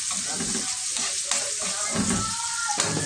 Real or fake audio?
real